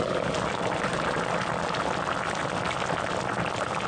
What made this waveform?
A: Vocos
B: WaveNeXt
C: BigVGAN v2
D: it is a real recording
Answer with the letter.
D